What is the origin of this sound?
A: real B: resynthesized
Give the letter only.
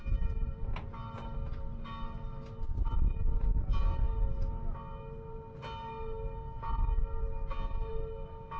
A